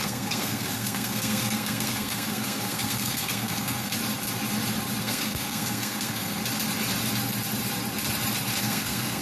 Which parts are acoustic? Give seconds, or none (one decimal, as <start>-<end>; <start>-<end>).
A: 3.9-5.0; 6.4-8.6